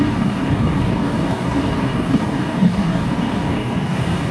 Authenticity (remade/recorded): remade